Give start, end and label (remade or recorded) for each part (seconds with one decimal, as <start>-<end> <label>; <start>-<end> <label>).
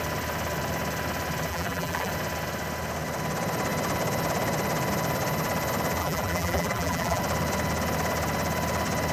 0.0-1.5 recorded; 1.5-2.1 remade; 2.1-6.0 recorded; 6.0-7.2 remade; 7.2-9.1 recorded